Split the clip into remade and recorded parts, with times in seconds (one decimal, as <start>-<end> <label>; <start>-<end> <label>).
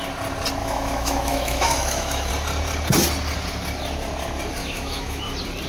0.0-0.6 recorded; 0.6-2.3 remade; 2.3-4.6 recorded; 4.6-5.3 remade; 5.3-5.7 recorded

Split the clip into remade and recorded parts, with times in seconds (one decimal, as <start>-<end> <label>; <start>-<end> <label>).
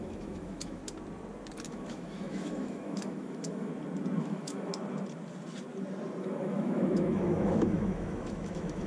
0.0-0.8 remade; 0.8-1.7 recorded; 1.7-3.7 remade; 3.7-4.2 recorded; 4.2-4.7 remade; 4.7-6.2 recorded; 6.2-8.9 remade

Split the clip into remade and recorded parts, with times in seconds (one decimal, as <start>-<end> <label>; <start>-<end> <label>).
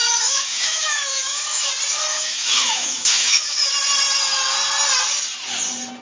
0.0-1.7 remade; 1.7-2.1 recorded; 2.1-3.7 remade; 3.7-6.0 recorded